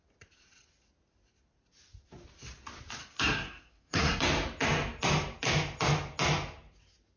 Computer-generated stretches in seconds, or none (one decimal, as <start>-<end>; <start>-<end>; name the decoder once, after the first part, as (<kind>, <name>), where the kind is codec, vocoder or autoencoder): 3.0-4.2 (codec, SNAC)